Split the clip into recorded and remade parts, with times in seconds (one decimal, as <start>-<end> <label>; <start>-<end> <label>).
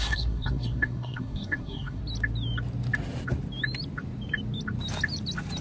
0.0-2.0 remade; 2.0-5.6 recorded